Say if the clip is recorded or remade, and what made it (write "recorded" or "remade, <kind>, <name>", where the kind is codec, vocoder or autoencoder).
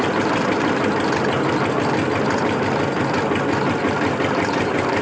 recorded